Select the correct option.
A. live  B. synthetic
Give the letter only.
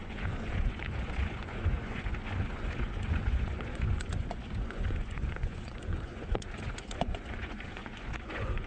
B